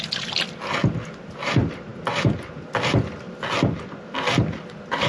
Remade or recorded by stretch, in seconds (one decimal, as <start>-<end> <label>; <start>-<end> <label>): 0.0-5.1 recorded